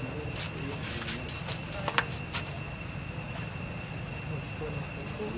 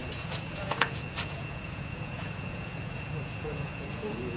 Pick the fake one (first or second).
second